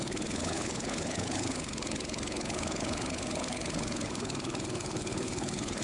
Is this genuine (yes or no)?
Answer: no